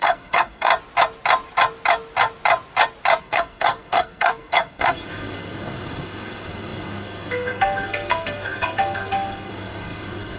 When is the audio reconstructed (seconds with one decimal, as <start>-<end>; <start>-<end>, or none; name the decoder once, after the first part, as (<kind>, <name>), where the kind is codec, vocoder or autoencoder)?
0.0-0.7 (codec, SNAC); 3.2-10.4